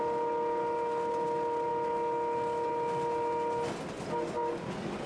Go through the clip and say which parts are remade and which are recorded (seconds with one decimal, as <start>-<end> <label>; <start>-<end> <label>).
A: 0.0-5.1 recorded